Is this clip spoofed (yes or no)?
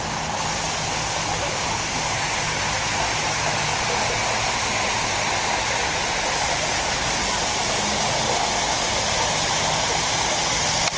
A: no